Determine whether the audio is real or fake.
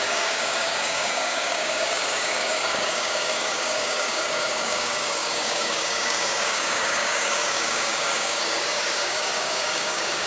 fake